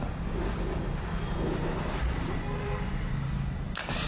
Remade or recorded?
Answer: recorded